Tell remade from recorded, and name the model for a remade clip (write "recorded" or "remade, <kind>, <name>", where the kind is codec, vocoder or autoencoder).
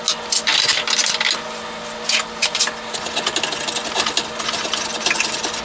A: recorded